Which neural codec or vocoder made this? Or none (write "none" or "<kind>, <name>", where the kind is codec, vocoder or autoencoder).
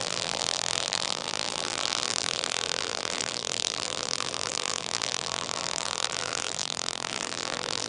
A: vocoder, BigVGAN v2